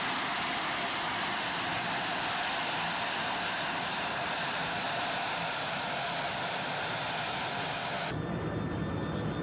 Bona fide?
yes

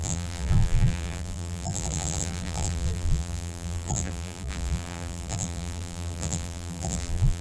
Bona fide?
no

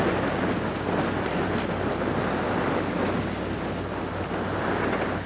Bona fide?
yes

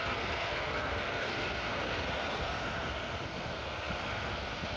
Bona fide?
no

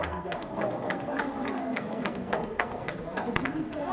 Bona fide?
no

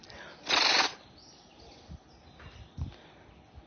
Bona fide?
yes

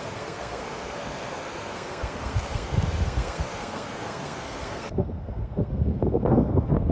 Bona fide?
no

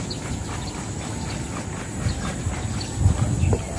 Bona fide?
yes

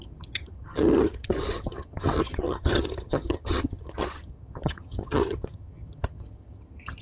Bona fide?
no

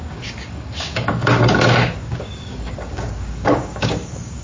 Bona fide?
no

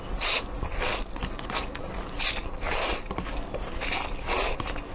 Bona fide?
yes